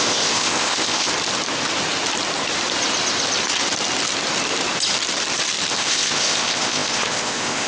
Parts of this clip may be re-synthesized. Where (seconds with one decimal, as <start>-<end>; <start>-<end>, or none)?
0.0-1.1; 5.7-7.7